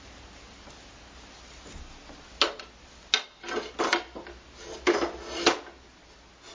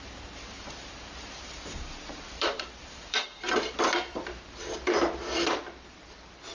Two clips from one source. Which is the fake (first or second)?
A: second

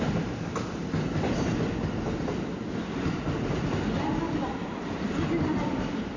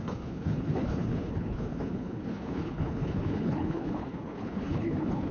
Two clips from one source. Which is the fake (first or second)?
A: second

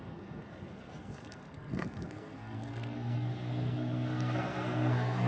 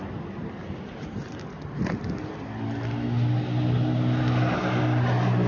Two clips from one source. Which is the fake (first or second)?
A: first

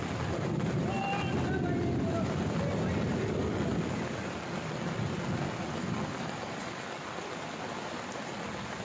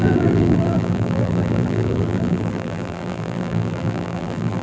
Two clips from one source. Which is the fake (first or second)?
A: second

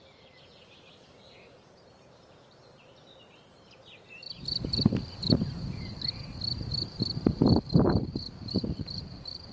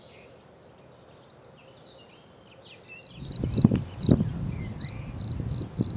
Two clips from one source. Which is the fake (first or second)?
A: first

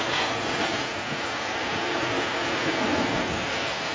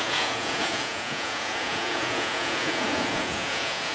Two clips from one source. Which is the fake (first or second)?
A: second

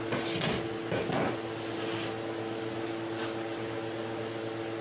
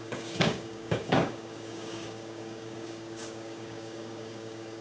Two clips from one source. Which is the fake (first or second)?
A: second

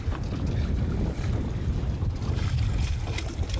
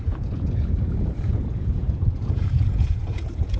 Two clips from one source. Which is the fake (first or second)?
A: second